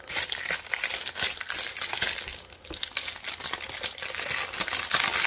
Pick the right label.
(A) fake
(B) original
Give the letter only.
B